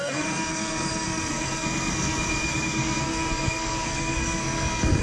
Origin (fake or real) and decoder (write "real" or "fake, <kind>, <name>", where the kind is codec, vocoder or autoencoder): fake, codec, SNAC